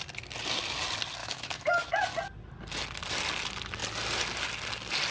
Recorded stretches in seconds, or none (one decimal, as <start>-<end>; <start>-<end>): 0.0-1.2; 1.9-5.1